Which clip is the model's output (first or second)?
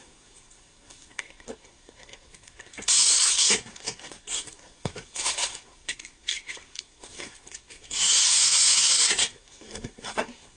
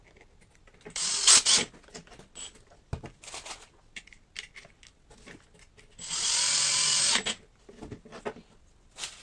first